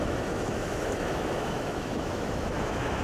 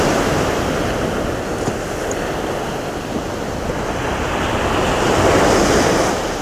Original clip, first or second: second